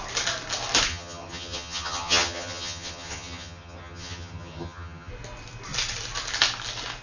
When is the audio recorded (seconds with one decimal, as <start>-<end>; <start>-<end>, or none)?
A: 0.0-0.9; 5.1-7.0